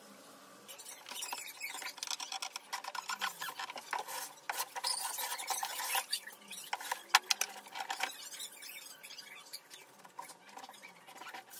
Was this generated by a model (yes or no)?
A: no